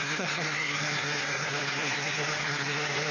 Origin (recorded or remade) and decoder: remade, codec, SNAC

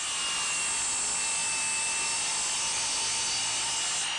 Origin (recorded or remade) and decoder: recorded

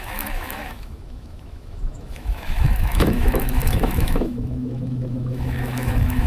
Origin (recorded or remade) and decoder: remade, autoencoder, DAC-VAE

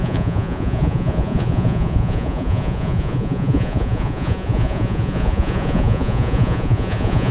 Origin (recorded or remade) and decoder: remade, vocoder, Vocos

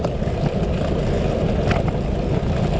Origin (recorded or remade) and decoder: recorded